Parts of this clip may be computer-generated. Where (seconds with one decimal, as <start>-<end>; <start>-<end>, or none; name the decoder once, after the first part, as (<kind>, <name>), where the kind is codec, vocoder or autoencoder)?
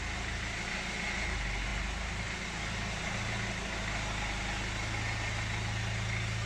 none